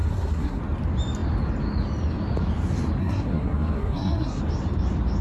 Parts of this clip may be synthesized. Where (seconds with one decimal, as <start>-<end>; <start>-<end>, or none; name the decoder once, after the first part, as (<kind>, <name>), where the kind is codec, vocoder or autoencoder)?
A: 0.0-0.6 (codec, SNAC); 3.0-4.4